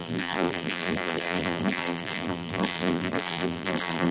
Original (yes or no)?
no